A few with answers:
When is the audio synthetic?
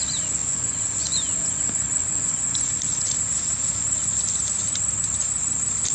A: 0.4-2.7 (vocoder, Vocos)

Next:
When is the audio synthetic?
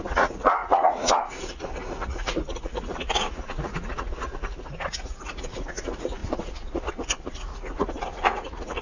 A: 0.0-8.8 (vocoder, Vocos)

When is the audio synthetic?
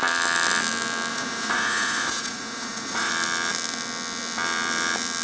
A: 1.1-3.1 (vocoder, Vocos)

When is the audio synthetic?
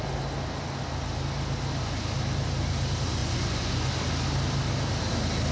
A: 3.2-3.9 (vocoder, Vocos)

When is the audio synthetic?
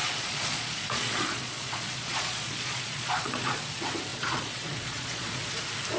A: 0.0-3.6 (vocoder, Vocos); 4.1-5.6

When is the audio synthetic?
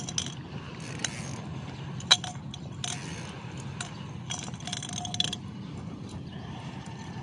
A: none